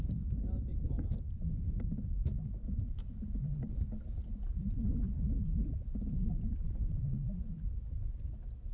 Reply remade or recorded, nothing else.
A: recorded